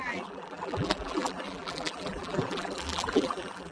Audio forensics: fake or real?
fake